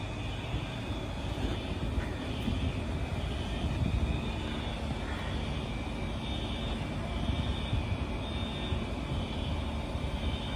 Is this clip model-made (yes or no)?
no